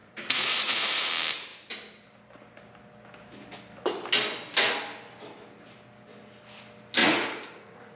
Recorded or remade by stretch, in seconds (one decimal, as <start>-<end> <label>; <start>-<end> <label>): 0.0-1.1 remade; 1.1-7.0 recorded; 7.0-8.0 remade